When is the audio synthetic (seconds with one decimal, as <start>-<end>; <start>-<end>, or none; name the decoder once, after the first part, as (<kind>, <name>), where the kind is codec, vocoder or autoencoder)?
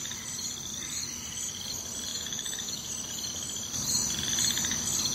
2.1-2.9 (autoencoder, DAC-VAE)